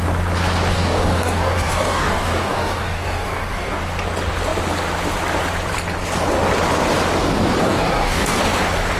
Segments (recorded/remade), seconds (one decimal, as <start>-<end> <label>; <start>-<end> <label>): 0.0-0.7 recorded; 0.7-3.8 remade; 3.8-7.6 recorded; 7.6-8.4 remade; 8.4-9.0 recorded